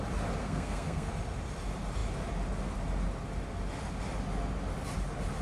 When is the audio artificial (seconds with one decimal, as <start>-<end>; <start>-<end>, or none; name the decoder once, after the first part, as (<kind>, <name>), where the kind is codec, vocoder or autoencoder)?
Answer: 0.4-1.1 (codec, SNAC)

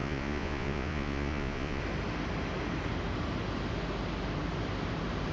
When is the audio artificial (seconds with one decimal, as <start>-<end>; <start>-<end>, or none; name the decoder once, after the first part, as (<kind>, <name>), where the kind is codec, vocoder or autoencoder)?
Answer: 0.0-1.8 (vocoder, Vocos)

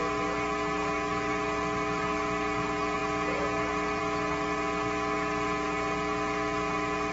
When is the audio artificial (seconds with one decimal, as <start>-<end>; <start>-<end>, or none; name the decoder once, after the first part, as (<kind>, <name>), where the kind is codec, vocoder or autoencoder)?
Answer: none

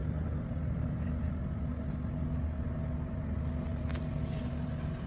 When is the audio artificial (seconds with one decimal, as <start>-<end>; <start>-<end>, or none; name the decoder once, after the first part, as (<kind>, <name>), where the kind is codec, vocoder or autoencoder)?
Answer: none